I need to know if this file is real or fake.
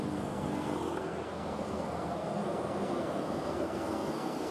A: fake